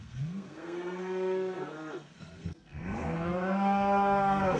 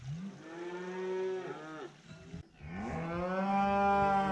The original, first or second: second